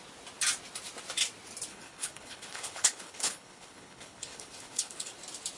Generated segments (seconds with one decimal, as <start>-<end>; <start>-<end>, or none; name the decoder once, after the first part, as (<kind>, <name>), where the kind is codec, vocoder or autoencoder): 1.7-5.1 (codec, HILCodec)